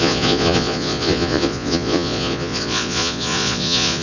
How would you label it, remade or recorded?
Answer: remade